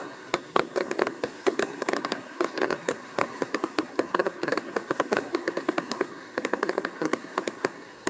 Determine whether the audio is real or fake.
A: fake